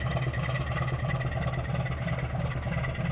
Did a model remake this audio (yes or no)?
no